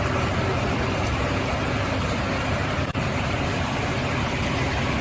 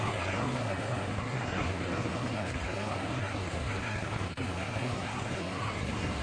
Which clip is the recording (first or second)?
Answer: first